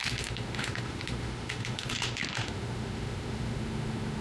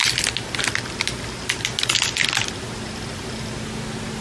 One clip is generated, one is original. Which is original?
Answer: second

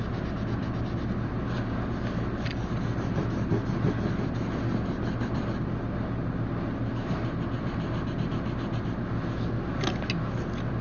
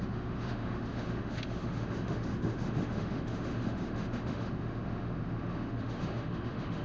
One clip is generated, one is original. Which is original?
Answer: first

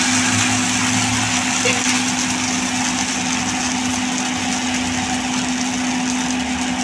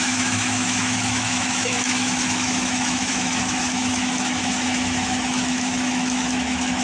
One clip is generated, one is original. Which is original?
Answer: first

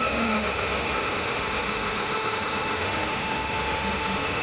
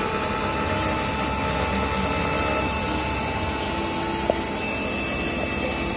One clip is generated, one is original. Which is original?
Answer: second